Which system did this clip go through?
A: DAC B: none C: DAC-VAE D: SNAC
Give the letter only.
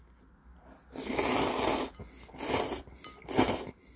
B